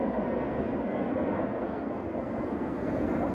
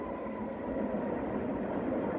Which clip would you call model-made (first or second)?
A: first